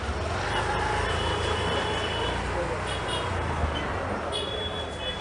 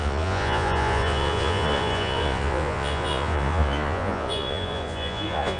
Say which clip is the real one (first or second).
first